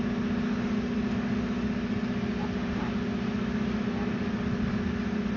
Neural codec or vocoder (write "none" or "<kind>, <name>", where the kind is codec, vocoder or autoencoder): none